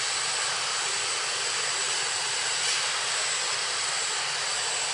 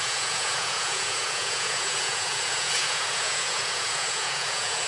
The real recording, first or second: first